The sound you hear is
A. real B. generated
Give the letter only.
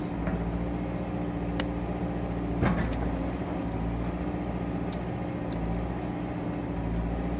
A